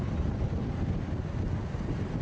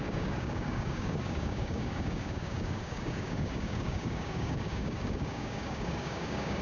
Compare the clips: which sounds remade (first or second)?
second